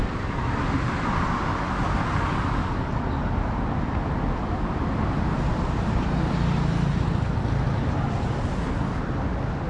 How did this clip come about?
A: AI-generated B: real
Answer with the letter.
B